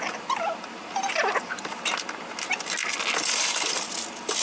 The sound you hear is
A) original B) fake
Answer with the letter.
A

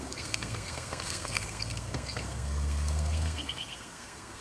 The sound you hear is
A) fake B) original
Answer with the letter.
A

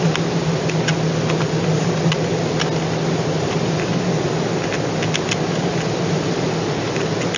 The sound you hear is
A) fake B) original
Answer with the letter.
B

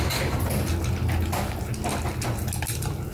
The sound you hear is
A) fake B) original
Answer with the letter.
B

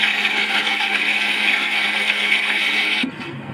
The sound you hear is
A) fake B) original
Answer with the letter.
A